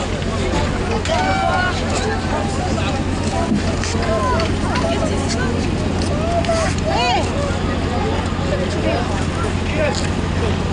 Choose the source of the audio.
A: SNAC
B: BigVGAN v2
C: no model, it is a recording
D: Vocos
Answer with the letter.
C